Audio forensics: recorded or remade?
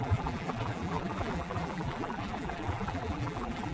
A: remade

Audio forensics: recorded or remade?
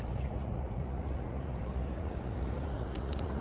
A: remade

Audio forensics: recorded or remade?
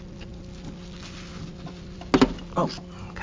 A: recorded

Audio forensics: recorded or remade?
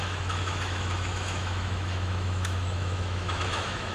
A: remade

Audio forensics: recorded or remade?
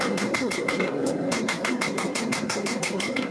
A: remade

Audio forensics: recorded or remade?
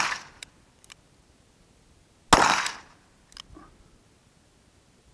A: recorded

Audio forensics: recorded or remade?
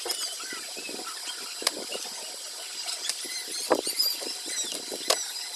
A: recorded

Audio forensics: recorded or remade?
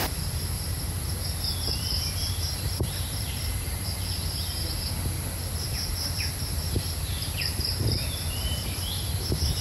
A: remade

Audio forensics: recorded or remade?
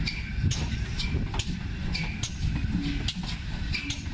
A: recorded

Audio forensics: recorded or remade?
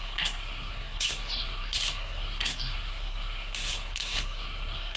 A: remade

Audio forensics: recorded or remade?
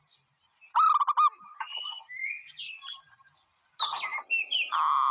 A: recorded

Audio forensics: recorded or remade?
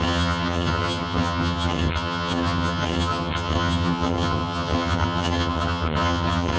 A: remade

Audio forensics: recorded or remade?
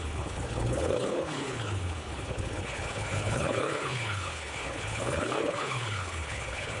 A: remade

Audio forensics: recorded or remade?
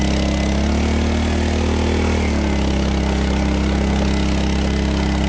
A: recorded